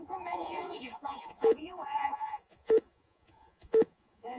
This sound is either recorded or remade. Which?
remade